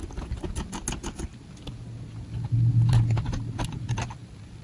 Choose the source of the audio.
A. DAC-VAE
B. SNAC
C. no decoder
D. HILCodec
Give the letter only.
C